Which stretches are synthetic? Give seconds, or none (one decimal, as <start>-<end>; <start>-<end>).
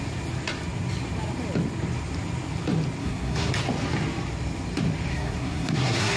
3.0-3.5; 5.1-6.2